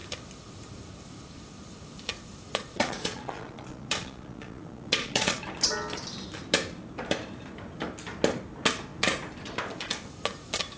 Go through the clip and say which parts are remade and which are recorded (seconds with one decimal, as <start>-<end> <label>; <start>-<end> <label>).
0.0-2.5 recorded; 2.5-5.4 remade; 5.4-10.8 recorded